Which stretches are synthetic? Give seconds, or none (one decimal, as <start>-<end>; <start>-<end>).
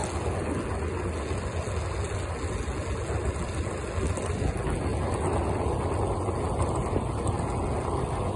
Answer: none